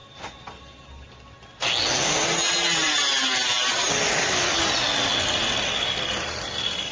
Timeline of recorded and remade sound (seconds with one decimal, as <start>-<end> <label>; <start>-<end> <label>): 0.0-3.4 recorded; 3.4-4.6 remade; 4.6-6.9 recorded